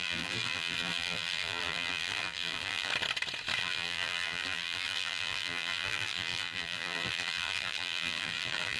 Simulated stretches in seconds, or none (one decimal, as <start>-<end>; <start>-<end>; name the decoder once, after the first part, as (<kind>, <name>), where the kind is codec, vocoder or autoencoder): 0.0-2.9 (vocoder, BigVGAN v2); 3.6-8.8